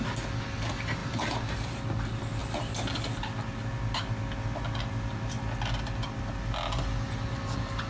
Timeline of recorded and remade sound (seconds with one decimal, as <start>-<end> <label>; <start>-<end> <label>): 0.0-1.0 recorded; 1.0-1.8 remade; 1.8-7.9 recorded